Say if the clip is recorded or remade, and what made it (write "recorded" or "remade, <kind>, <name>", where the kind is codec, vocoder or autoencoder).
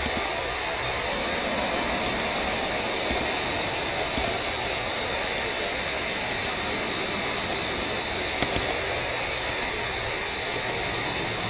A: recorded